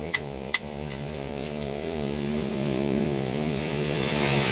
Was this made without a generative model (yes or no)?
no